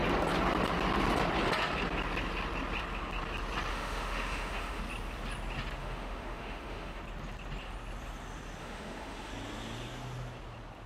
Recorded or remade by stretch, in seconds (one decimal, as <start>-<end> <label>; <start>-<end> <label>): 0.0-3.7 recorded; 3.7-4.8 remade; 4.8-5.8 recorded; 5.8-7.0 remade; 7.0-8.6 recorded; 8.6-9.3 remade; 9.3-10.9 recorded